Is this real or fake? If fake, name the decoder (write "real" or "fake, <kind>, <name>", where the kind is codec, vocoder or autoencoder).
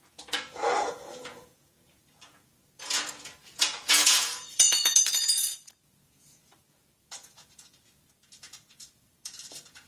fake, vocoder, Vocos